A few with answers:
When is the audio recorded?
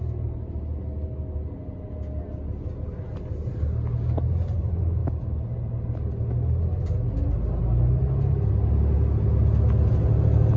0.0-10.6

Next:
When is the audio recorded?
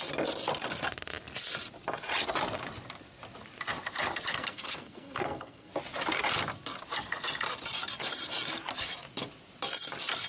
0.0-4.3; 5.7-10.3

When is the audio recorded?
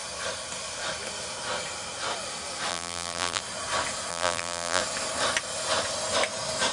0.0-2.7; 3.4-4.1; 4.8-6.7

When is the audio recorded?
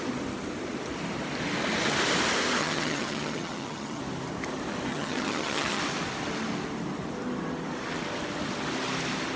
0.0-2.6; 4.0-4.9; 5.8-9.4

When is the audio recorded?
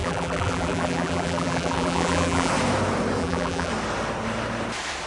2.5-3.2; 3.7-5.1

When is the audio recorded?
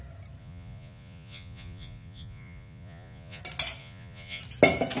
0.0-0.4; 3.4-3.8; 4.4-5.0